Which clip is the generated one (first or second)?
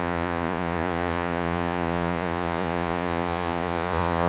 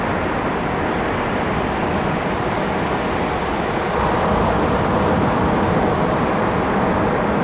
first